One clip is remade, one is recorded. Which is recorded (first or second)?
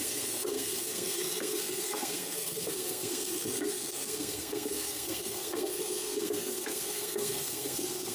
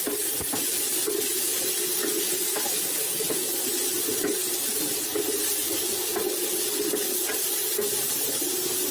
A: second